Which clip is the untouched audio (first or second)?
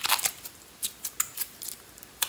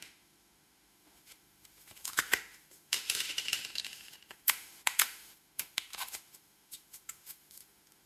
first